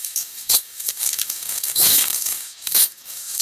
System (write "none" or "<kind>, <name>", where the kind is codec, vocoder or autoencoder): codec, DAC